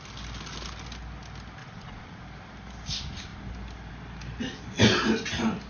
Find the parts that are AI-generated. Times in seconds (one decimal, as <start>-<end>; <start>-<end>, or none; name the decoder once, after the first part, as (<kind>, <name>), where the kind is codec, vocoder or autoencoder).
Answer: 1.6-2.2 (vocoder, Vocos)